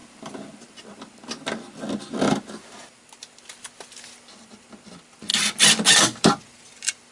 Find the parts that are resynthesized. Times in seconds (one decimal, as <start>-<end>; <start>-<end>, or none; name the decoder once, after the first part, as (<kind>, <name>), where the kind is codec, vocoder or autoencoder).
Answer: none